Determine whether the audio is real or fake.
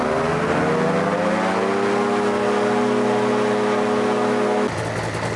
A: real